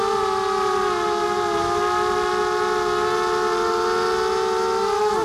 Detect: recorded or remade recorded